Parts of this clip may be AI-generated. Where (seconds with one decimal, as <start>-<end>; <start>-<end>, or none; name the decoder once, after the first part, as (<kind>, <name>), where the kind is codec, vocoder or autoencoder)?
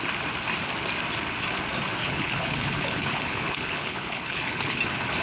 2.0-4.8 (codec, HILCodec)